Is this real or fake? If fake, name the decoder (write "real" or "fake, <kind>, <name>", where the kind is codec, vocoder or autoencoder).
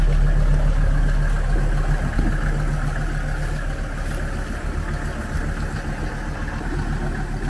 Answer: real